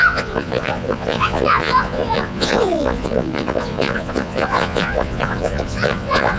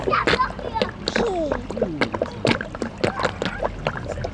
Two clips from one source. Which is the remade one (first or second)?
first